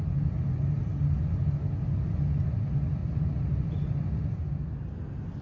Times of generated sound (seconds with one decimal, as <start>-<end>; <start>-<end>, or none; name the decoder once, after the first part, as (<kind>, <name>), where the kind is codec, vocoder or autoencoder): none